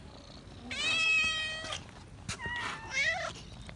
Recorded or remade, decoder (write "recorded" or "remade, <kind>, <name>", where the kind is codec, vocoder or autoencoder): recorded